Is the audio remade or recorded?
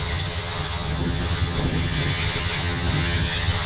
remade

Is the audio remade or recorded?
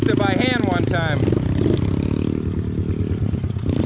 recorded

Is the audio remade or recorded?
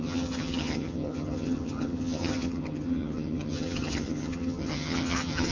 remade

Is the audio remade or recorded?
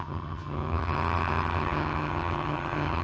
remade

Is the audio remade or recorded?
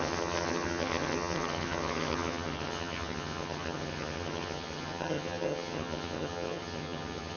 remade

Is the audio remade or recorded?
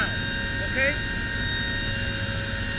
recorded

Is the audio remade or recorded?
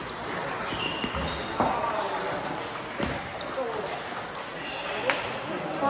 recorded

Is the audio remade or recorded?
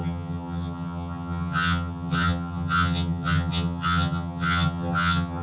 remade